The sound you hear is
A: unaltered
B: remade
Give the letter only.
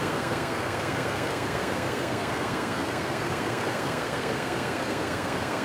B